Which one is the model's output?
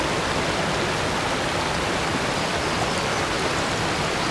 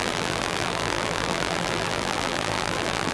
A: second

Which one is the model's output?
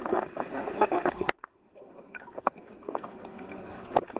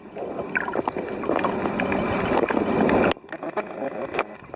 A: first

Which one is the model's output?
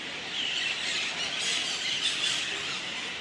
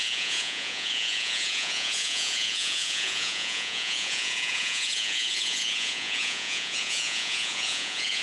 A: second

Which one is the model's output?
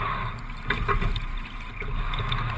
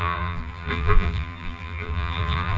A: second